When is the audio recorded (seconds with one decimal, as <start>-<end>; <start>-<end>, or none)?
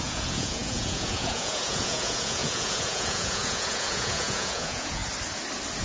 5.0-5.8